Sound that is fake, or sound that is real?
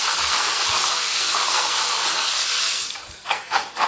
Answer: fake